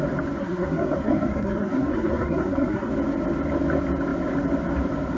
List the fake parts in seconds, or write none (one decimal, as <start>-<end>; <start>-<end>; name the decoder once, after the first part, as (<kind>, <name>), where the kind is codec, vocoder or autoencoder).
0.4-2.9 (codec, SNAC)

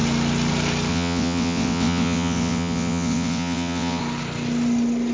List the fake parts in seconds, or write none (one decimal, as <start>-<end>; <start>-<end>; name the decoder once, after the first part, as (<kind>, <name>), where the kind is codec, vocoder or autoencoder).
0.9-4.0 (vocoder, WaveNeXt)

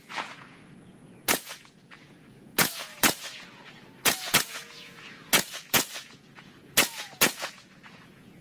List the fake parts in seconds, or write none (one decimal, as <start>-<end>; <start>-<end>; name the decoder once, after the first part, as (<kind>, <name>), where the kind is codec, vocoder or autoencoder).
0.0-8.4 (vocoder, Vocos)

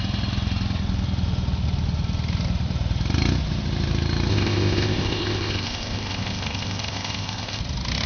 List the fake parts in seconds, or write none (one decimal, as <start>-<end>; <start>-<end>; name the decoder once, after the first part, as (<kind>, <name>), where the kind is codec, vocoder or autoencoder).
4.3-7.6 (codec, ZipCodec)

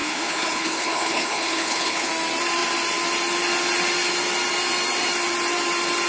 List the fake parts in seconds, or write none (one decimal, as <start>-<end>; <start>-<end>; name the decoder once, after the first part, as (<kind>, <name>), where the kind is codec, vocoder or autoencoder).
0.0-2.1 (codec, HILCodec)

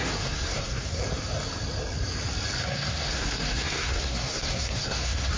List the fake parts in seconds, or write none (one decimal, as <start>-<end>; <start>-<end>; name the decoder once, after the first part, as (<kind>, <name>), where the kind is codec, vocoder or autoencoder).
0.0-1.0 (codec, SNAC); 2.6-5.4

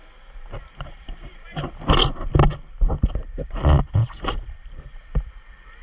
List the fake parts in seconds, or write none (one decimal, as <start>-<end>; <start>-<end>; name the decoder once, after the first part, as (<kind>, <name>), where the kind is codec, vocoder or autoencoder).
0.0-1.8 (vocoder, BigVGAN v2); 3.8-5.0

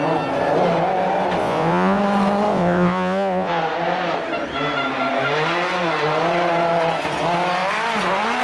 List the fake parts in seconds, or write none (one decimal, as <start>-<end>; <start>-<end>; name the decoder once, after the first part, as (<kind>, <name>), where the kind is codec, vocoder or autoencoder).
1.4-2.0 (vocoder, Vocos); 2.5-3.6